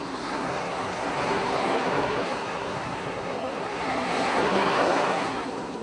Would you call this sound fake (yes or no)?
yes